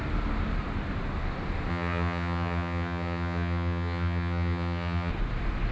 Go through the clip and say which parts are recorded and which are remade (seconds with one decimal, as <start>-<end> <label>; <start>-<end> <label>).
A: 0.0-1.7 recorded; 1.7-5.1 remade; 5.1-5.7 recorded